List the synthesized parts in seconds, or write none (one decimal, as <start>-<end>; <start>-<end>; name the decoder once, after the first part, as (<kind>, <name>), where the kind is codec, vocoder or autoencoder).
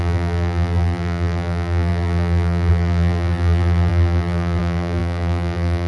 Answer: 0.0-5.9 (vocoder, BigVGAN v2)